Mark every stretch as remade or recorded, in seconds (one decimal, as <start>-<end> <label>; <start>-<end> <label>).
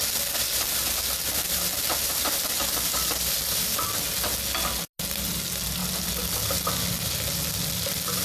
0.0-8.2 recorded